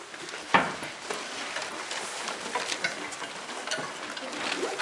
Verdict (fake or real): real